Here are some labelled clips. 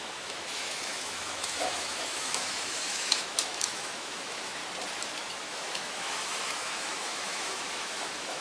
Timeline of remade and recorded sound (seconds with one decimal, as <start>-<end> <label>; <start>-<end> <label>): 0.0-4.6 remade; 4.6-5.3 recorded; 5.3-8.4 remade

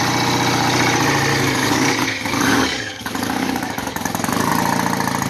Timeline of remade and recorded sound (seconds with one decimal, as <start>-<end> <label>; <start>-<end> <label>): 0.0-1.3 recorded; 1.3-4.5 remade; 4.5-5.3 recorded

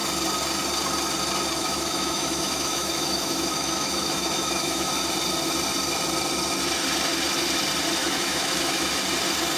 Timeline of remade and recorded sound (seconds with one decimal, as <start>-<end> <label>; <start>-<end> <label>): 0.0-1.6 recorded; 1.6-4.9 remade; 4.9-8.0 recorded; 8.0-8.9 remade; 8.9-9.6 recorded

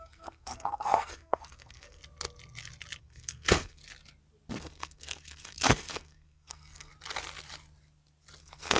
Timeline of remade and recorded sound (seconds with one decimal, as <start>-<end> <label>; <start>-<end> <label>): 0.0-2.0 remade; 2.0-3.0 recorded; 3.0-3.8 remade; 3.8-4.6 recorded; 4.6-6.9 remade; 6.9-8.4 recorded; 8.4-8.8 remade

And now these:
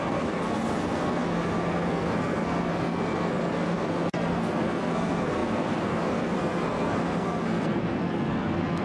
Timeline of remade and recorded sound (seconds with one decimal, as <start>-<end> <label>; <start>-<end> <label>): 0.0-8.8 remade